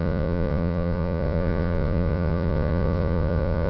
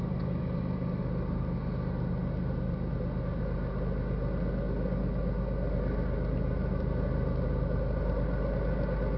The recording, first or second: second